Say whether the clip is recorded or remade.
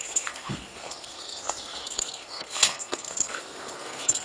remade